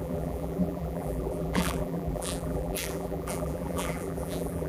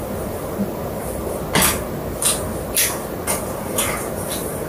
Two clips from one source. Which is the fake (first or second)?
first